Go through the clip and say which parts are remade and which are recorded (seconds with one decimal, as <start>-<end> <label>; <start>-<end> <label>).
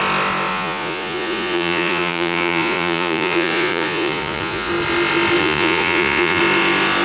0.0-0.5 recorded; 0.5-4.7 remade; 4.7-5.4 recorded; 5.4-6.4 remade; 6.4-7.0 recorded